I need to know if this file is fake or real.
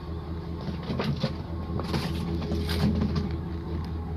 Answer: real